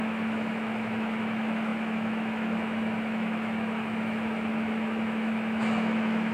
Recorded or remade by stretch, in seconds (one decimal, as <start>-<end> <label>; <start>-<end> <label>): 0.0-6.3 remade